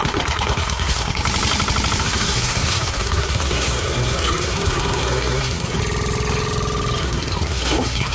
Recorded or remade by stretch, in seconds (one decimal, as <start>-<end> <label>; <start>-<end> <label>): 0.0-1.2 remade; 1.2-2.0 recorded; 2.0-5.8 remade; 5.8-7.0 recorded; 7.0-8.1 remade